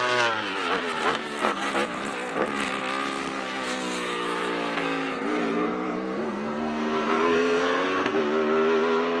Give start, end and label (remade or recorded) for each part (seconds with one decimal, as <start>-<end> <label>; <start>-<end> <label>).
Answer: 0.0-1.2 recorded; 1.2-1.7 remade; 1.7-3.2 recorded; 3.2-8.2 remade; 8.2-9.2 recorded